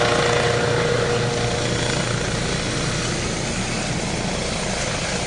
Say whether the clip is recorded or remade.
recorded